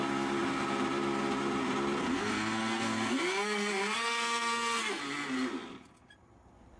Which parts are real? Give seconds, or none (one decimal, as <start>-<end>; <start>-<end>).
0.0-2.0; 5.0-6.8